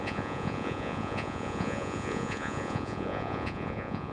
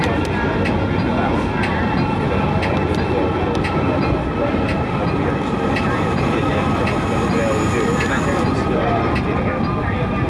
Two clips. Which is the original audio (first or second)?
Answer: second